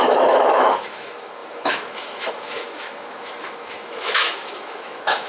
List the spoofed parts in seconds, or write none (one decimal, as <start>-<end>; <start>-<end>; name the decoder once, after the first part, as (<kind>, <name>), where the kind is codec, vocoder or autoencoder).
0.0-5.3 (autoencoder, DAC-VAE)

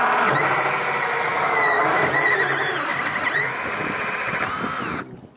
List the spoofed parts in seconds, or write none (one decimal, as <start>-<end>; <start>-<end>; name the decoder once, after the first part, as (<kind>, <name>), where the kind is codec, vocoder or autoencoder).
1.3-1.8 (autoencoder, DAC-VAE)

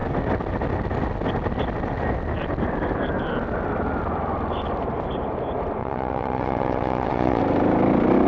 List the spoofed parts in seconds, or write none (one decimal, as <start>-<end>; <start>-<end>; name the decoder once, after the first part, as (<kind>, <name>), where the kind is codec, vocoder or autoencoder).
5.8-7.4 (vocoder, WaveNeXt)